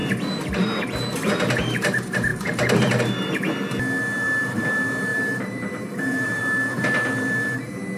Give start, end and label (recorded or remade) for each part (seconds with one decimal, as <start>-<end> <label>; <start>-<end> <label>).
0.0-2.3 recorded; 2.3-3.0 remade; 3.0-5.1 recorded; 5.1-6.4 remade; 6.4-8.0 recorded